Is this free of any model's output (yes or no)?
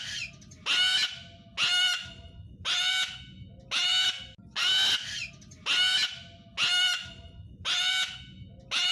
yes